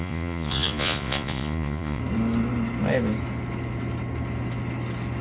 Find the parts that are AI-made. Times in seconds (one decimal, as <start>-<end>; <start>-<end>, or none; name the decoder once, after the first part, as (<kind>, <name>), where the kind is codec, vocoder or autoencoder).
0.0-2.0 (vocoder, Vocos)